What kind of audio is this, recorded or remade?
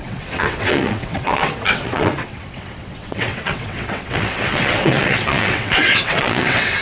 remade